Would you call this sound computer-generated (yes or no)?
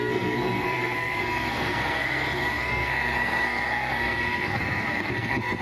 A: yes